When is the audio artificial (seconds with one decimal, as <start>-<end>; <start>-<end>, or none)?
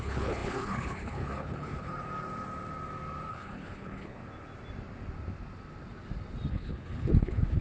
0.0-1.9; 3.3-4.2; 6.5-7.6